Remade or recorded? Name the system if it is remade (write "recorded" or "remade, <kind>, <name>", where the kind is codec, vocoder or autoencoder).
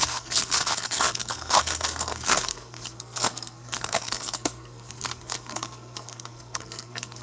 remade, codec, SNAC